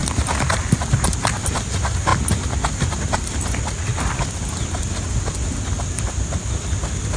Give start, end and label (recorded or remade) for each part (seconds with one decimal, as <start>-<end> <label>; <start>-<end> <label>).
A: 0.0-1.4 remade; 1.4-3.9 recorded; 3.9-5.9 remade; 5.9-7.2 recorded